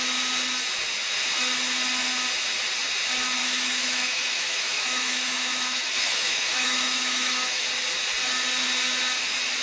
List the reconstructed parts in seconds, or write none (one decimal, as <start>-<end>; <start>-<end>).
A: 3.4-7.7